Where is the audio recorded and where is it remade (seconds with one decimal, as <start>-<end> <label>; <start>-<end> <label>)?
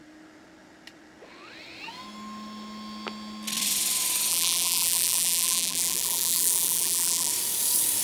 0.0-4.3 recorded; 4.3-7.3 remade; 7.3-8.0 recorded